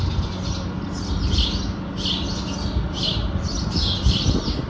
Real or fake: real